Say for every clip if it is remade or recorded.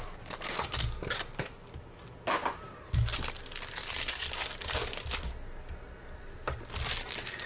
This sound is recorded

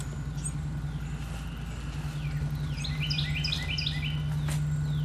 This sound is recorded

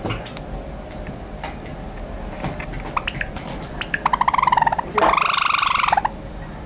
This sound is recorded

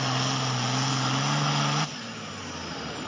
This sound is recorded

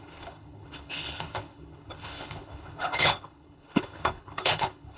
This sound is remade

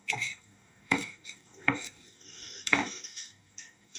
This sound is remade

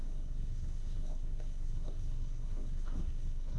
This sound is remade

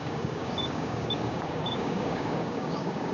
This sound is remade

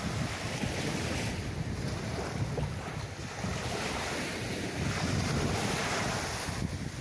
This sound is recorded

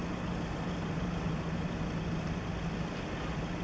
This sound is recorded